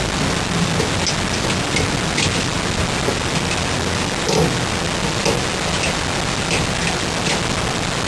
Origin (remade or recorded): recorded